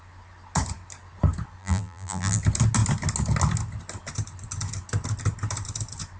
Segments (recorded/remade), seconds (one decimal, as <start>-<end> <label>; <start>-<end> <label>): 0.0-1.6 recorded; 1.6-2.4 remade; 2.4-6.2 recorded